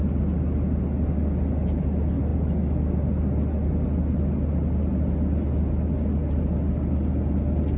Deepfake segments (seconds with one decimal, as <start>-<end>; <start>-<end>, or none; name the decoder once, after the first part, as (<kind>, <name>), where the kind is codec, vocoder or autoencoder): none